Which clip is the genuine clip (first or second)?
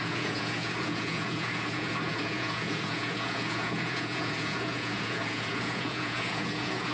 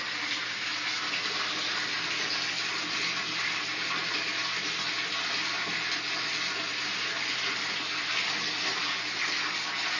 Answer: second